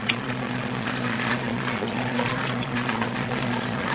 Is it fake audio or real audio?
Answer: fake